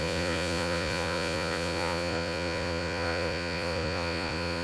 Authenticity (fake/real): fake